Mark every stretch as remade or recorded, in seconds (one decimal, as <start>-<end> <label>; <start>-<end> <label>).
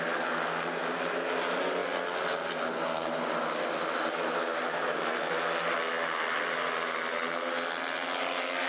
0.0-8.7 recorded